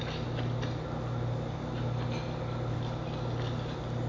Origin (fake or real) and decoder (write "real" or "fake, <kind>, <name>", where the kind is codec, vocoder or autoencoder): real